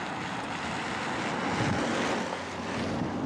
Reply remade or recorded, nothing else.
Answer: recorded